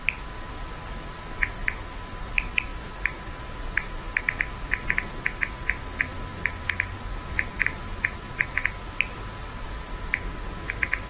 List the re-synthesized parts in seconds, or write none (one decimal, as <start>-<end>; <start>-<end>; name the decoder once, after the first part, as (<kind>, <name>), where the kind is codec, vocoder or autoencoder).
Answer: 1.6-2.3 (vocoder, BigVGAN v2); 2.7-4.2; 6.3-8.2; 9.5-10.7